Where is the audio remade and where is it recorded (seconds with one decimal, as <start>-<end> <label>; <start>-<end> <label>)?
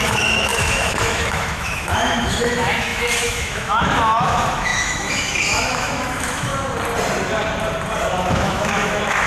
0.0-6.5 remade; 6.5-8.2 recorded; 8.2-9.3 remade